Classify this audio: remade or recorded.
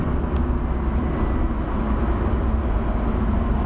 recorded